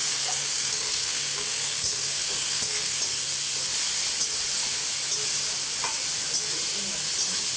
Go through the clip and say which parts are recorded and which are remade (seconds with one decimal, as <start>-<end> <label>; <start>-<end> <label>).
0.0-3.0 remade; 3.0-7.6 recorded